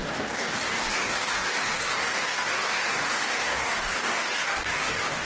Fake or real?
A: fake